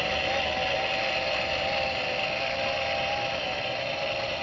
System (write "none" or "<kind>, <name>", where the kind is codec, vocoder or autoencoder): none